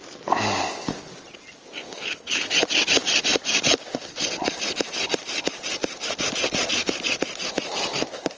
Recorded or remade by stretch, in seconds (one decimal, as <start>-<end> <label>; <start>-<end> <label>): 0.0-1.8 recorded; 1.8-2.5 remade; 2.5-8.4 recorded